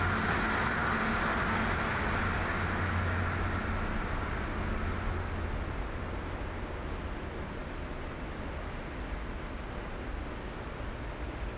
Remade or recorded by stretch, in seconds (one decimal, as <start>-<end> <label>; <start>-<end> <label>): 0.0-11.6 recorded